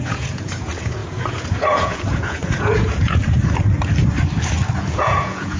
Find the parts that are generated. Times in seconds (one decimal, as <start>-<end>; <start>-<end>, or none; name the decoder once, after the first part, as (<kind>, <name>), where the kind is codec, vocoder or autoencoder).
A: 0.0-3.2 (vocoder, Vocos); 4.8-5.6